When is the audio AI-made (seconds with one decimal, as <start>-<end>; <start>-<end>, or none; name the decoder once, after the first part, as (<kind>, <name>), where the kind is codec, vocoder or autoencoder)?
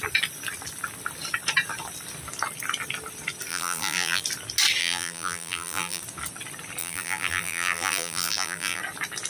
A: 3.5-4.2 (vocoder, BigVGAN v2); 4.8-6.0; 6.8-8.8